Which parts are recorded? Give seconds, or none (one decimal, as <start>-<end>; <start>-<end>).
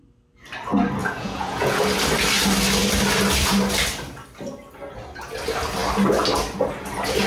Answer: 0.0-1.0; 1.8-7.3